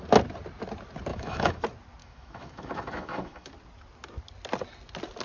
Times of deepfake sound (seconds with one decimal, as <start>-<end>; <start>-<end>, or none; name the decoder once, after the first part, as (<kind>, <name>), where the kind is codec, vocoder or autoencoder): 1.1-1.6 (autoencoder, DAC-VAE); 2.0-3.5